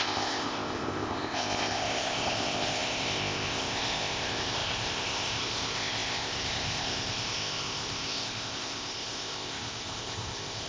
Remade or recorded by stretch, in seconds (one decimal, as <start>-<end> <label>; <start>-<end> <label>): 0.0-10.7 remade